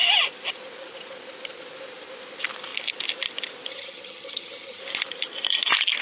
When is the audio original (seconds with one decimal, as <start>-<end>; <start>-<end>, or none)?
0.0-3.7; 4.8-6.0